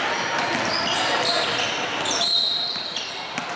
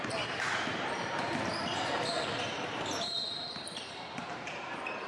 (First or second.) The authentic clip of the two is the first